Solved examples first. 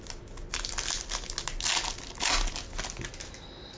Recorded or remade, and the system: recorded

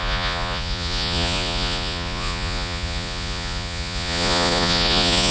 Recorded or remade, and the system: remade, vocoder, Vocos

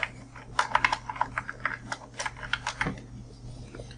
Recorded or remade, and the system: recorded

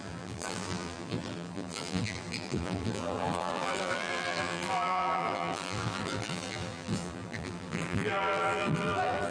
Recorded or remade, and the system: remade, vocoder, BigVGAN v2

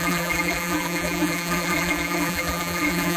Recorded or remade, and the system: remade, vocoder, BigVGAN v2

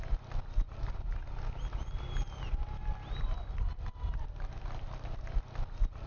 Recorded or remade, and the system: recorded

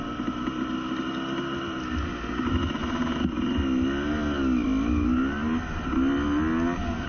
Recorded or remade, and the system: recorded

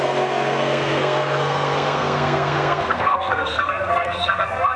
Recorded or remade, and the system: remade, codec, SNAC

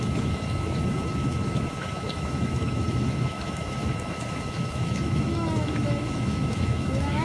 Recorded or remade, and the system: remade, autoencoder, DAC-VAE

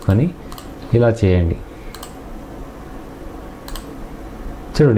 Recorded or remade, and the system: recorded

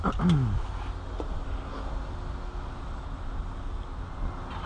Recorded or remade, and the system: recorded